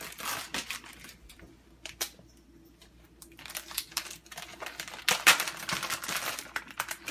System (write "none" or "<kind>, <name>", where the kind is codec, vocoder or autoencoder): none